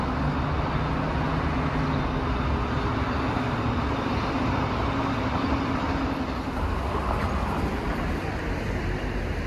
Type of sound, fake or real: real